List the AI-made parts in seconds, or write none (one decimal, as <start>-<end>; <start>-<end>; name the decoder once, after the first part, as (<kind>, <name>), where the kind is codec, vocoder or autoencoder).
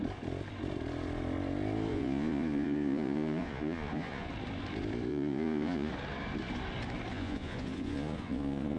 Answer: 1.9-4.3 (vocoder, Vocos); 5.1-5.9; 7.1-8.8